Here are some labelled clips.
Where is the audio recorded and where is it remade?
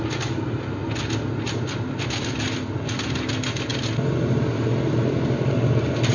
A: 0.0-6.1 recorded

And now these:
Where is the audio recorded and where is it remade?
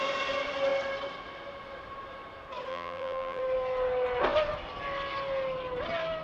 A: 0.0-2.7 recorded; 2.7-3.4 remade; 3.4-6.2 recorded